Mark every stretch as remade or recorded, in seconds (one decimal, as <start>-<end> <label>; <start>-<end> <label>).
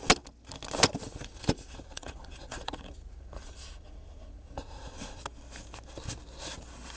0.0-1.0 recorded; 1.0-5.2 remade; 5.2-7.0 recorded